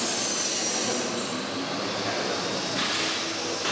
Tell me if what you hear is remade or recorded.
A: recorded